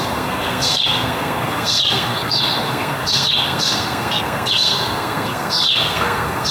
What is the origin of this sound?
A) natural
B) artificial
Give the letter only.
B